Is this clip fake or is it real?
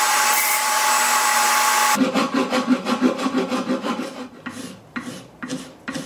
fake